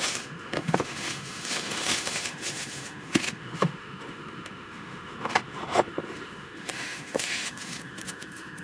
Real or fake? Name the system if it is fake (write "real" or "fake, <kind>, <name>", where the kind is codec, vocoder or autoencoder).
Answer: fake, autoencoder, DAC-VAE